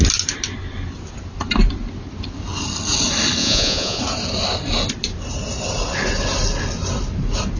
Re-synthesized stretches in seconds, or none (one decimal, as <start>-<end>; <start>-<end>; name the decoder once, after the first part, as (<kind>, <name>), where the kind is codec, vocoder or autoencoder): 3.4-4.0 (vocoder, Vocos)